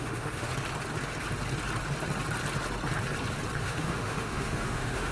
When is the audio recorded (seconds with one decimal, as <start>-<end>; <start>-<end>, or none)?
0.5-3.6